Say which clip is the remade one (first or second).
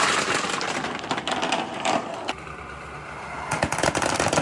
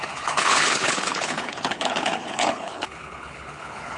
second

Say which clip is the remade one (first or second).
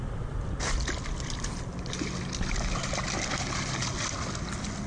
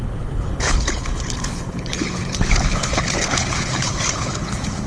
second